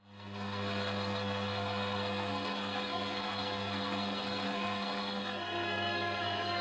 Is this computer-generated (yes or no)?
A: yes